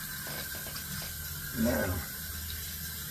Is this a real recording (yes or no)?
yes